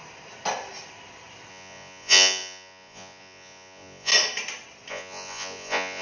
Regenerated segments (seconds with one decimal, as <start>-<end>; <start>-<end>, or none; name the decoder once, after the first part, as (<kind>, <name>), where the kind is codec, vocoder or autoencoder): 1.5-4.1 (vocoder, Vocos); 4.9-6.0